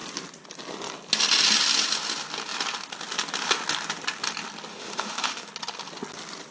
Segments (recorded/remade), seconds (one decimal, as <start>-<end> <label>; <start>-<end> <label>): 0.0-4.7 recorded; 4.7-5.5 remade; 5.5-6.5 recorded